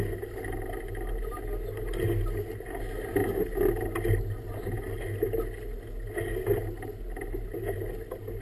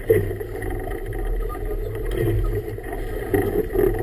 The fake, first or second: second